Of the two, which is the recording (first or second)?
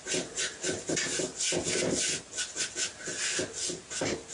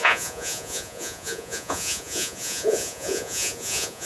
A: first